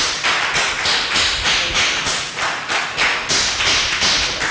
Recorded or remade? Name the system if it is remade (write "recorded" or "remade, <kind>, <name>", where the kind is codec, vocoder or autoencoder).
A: recorded